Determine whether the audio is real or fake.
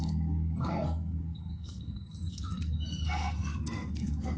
fake